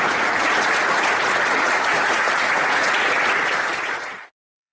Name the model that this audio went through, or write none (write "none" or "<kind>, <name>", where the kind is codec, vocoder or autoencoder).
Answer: vocoder, Vocos